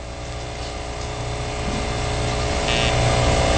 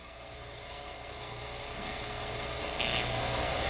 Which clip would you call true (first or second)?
first